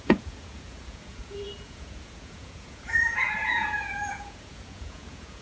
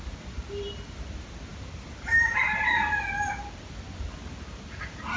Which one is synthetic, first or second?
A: first